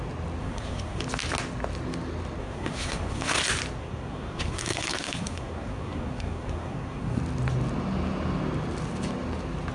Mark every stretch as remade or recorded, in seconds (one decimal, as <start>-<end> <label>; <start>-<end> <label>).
0.0-0.4 recorded; 0.4-1.0 remade; 1.0-2.4 recorded; 2.4-3.4 remade; 3.4-3.8 recorded; 3.8-7.2 remade; 7.2-9.7 recorded